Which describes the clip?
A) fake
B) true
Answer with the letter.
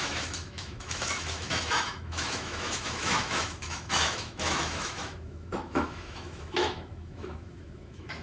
A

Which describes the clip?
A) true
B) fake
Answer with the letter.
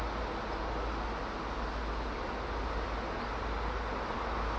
A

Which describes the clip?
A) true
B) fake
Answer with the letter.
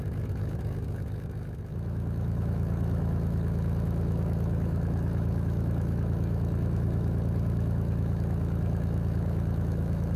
B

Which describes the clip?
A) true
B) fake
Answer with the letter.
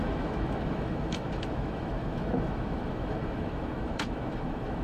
B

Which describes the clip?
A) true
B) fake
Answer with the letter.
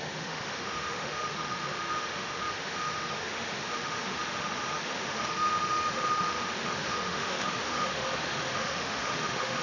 B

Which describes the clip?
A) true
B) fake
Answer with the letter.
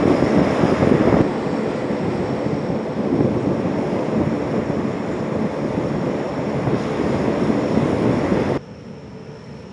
A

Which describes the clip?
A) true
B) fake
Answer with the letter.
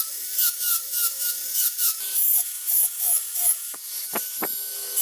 B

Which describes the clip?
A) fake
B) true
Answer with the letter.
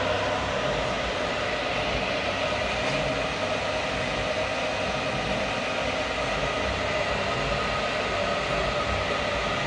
B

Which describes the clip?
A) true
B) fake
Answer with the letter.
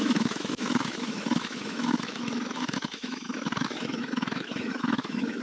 B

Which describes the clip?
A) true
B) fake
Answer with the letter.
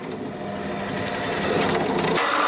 A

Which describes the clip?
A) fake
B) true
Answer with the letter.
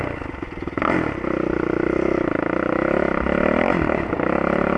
B